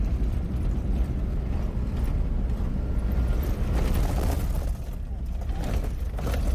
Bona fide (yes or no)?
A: yes